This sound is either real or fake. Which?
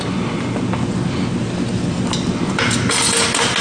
real